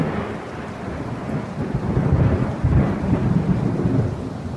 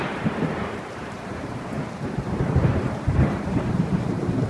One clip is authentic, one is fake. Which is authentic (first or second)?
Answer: first